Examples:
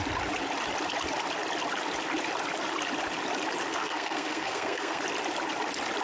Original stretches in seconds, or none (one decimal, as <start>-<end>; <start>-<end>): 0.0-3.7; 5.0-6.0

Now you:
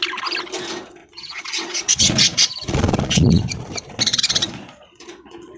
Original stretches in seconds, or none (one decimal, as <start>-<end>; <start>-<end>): 0.0-1.0; 3.4-4.1

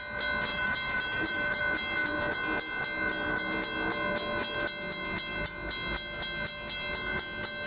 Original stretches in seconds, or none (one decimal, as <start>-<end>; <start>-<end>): 0.0-0.5; 1.6-7.7

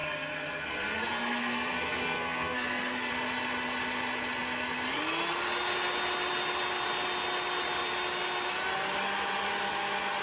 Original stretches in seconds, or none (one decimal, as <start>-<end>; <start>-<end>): 3.1-10.2

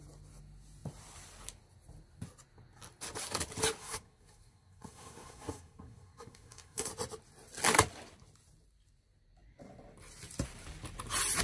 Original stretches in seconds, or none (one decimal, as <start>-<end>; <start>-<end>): 0.0-3.8; 6.9-11.4

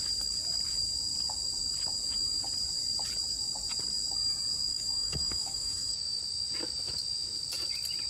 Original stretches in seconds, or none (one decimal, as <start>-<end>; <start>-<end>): 0.0-4.7; 6.2-8.1

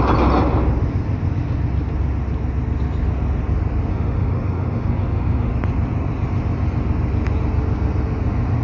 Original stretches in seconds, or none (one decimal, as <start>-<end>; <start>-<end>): 0.0-3.9; 5.5-8.6